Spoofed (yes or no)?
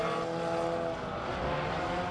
no